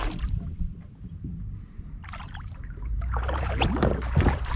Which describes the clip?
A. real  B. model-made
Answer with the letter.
B